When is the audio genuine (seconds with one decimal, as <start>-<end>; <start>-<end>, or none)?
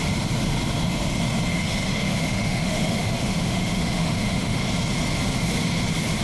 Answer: 0.0-1.5; 4.6-6.2